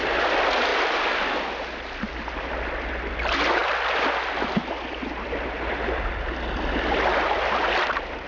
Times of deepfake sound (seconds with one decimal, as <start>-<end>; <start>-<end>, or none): none